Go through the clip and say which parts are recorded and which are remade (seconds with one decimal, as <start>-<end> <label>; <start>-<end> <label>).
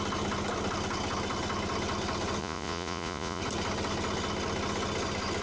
0.0-2.4 recorded; 2.4-3.4 remade; 3.4-5.4 recorded